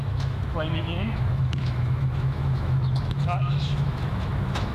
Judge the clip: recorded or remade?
remade